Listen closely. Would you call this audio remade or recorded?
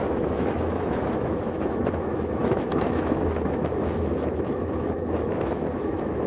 remade